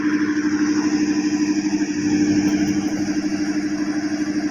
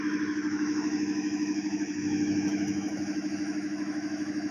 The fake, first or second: second